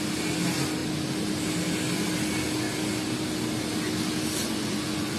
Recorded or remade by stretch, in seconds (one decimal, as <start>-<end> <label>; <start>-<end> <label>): 0.0-4.4 recorded; 4.4-5.2 remade